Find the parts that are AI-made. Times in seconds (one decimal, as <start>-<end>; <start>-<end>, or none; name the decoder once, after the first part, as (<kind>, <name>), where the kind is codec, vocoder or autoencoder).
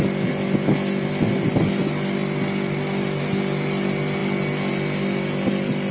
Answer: none